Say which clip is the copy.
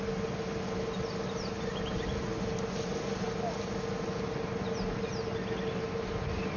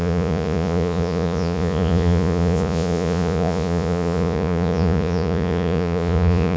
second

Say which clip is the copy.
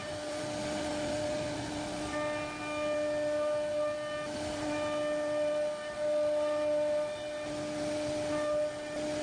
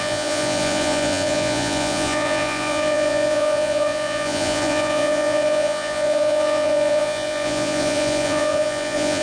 second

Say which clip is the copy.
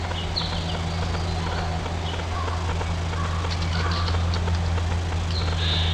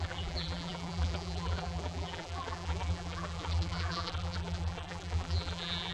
second